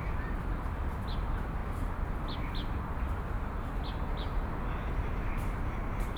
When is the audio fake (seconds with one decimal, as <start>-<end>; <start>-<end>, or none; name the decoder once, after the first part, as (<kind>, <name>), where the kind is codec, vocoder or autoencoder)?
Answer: none